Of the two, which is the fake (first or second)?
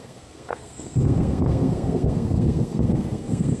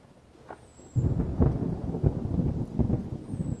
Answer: first